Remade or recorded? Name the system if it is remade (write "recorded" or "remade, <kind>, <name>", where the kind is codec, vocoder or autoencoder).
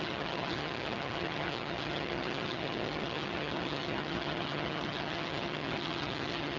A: remade, vocoder, HiFi-GAN